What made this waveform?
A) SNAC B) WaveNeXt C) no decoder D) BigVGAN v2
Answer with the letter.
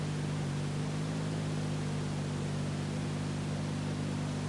C